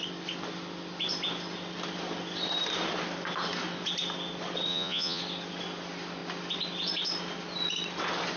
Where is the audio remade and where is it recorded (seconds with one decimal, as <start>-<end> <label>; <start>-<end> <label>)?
0.0-4.7 recorded; 4.7-5.2 remade; 5.2-8.4 recorded